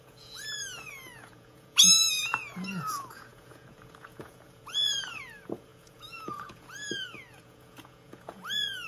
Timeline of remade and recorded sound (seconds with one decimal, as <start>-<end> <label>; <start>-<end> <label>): 0.0-8.9 remade